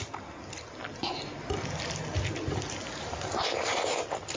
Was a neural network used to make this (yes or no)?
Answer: no